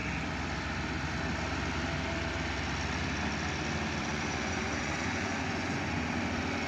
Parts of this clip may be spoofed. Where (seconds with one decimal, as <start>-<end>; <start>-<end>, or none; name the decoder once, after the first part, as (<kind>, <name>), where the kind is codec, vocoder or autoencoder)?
4.0-6.2 (vocoder, Vocos)